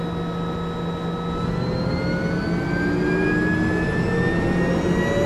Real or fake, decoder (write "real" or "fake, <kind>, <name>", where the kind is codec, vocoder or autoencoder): real